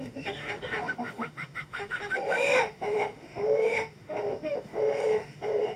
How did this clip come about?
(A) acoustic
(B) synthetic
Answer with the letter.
B